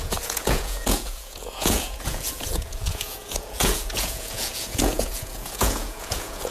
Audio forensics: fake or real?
fake